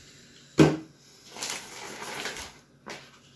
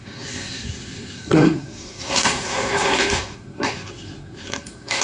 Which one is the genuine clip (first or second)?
first